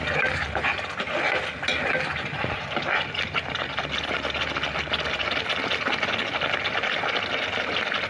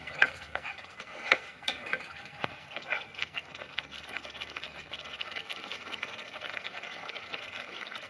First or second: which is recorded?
first